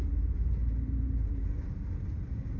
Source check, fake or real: fake